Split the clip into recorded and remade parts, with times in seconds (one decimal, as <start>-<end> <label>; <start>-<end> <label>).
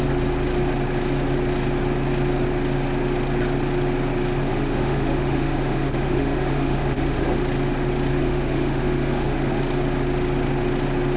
0.0-4.5 recorded; 4.5-7.4 remade; 7.4-8.2 recorded; 8.2-9.6 remade; 9.6-11.2 recorded